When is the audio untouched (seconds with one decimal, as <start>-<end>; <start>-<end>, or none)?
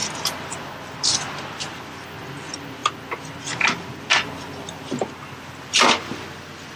0.0-6.8